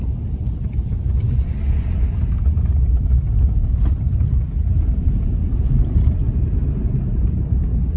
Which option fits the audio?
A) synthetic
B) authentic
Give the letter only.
A